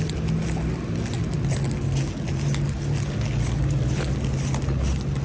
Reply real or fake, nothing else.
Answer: real